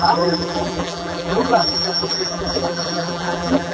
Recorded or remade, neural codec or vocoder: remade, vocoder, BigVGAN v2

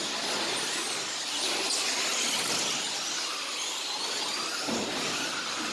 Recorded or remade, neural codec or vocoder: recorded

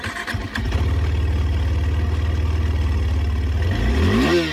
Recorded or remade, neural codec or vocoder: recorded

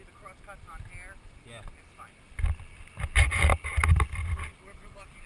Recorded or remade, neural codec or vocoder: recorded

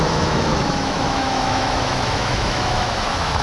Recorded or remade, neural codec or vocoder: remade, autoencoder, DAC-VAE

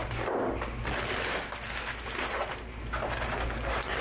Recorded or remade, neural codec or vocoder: recorded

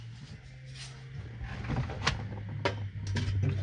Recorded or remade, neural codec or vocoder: recorded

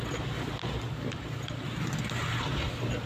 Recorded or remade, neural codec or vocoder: recorded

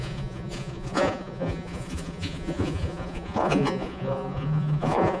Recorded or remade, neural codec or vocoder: remade, vocoder, Vocos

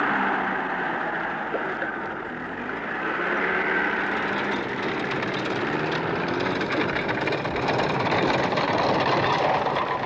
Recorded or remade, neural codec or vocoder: recorded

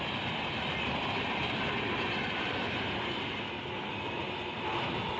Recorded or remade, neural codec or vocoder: recorded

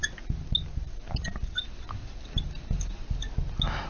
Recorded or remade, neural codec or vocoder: recorded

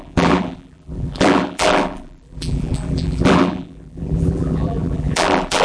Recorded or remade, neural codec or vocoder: remade, vocoder, BigVGAN v2